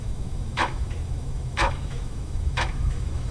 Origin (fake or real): fake